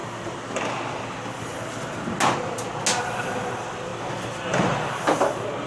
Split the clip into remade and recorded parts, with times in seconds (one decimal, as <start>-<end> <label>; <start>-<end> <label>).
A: 0.0-0.9 recorded; 0.9-1.5 remade; 1.5-3.0 recorded; 3.0-5.7 remade